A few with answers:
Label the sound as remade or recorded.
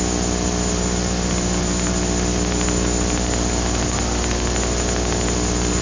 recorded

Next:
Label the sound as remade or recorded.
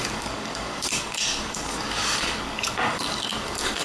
remade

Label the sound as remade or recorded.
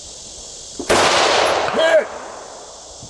recorded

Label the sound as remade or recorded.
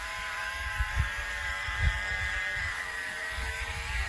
remade